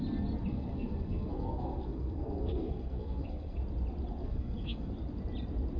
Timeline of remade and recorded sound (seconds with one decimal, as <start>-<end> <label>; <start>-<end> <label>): 0.0-0.5 recorded; 0.5-3.6 remade; 3.6-4.2 recorded; 4.2-4.9 remade; 4.9-5.8 recorded